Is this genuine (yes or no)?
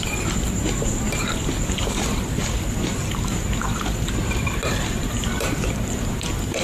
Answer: no